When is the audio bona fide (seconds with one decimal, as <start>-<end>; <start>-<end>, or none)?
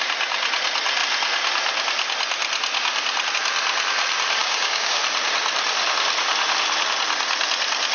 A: 0.0-4.4; 5.0-7.9